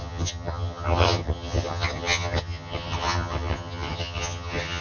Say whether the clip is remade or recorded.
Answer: remade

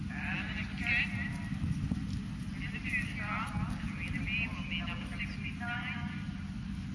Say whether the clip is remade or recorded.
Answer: recorded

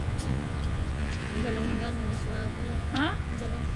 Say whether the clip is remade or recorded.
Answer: remade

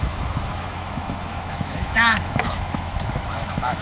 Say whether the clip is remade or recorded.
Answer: remade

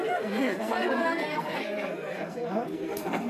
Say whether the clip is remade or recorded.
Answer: remade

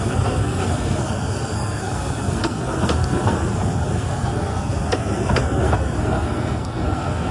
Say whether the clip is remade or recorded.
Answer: remade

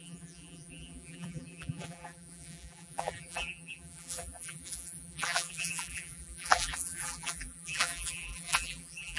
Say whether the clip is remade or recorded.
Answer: remade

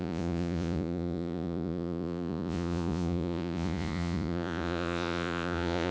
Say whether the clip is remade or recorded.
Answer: remade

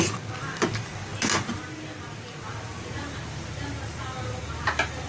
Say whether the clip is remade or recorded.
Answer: recorded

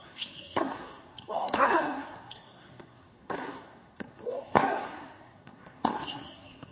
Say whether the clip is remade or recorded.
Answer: remade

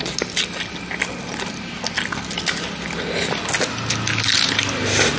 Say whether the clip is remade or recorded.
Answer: recorded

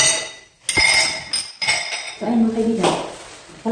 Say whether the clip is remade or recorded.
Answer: recorded